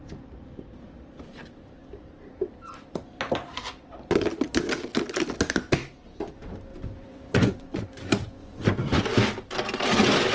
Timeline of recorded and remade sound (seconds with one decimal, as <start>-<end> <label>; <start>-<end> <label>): 0.0-6.7 recorded; 6.7-9.0 remade; 9.0-10.3 recorded